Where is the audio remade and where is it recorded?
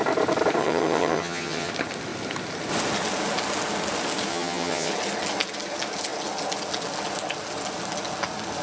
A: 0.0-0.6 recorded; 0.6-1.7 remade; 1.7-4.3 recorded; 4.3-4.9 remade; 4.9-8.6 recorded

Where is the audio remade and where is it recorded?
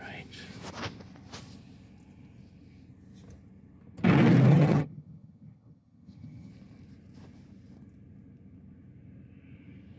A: 0.0-4.5 recorded; 4.5-6.5 remade; 6.5-10.0 recorded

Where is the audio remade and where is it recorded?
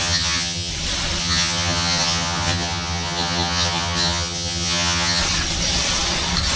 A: 0.0-0.7 remade; 0.7-1.2 recorded; 1.2-5.2 remade; 5.2-6.6 recorded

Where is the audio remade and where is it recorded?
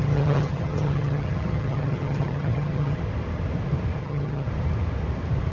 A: 0.0-3.0 remade; 3.0-4.0 recorded; 4.0-4.5 remade; 4.5-5.5 recorded